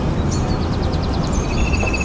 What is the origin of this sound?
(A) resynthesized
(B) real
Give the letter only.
B